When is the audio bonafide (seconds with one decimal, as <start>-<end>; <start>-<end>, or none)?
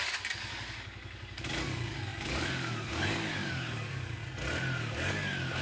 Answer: 4.2-4.8